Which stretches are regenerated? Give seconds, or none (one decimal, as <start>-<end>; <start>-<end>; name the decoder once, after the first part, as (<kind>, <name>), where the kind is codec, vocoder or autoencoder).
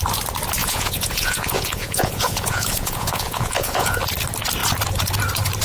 0.6-4.0 (vocoder, Vocos)